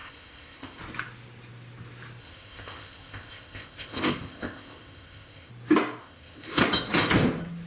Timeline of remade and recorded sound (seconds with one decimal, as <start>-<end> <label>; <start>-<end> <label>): 0.0-0.8 remade; 0.8-2.2 recorded; 2.2-5.5 remade; 5.5-6.0 recorded; 6.0-6.6 remade; 6.6-7.7 recorded